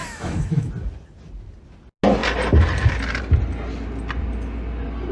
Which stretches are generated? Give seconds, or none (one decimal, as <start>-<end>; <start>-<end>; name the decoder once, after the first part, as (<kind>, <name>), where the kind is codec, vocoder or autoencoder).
0.0-0.7 (autoencoder, DAC-VAE)